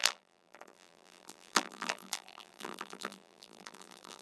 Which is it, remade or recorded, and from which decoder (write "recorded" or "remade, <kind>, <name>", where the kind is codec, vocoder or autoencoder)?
remade, vocoder, BigVGAN v2